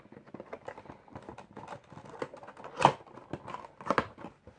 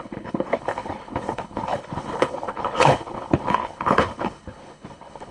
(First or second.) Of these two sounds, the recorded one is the first